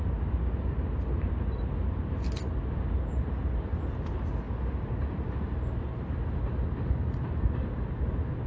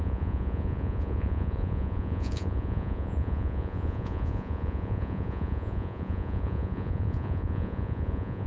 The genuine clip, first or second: first